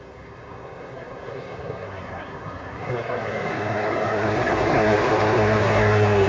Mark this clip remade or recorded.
remade